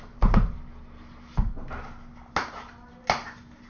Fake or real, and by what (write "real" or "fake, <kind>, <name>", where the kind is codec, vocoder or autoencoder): real